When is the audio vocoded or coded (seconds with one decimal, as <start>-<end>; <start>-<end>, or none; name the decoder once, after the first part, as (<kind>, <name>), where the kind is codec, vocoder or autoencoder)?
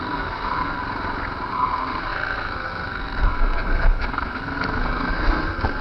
0.0-0.8 (codec, SNAC); 1.5-5.8